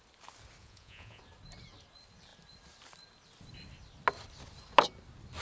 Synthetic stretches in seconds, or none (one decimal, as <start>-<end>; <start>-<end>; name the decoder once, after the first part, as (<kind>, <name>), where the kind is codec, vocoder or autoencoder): 0.6-1.2 (vocoder, Vocos)